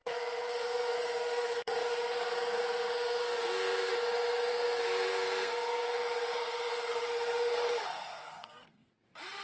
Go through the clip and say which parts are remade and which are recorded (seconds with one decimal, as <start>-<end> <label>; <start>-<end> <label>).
0.0-3.9 remade; 3.9-4.5 recorded; 4.5-8.9 remade; 8.9-9.4 recorded